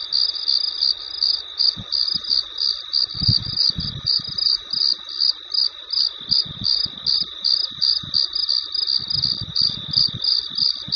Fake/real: real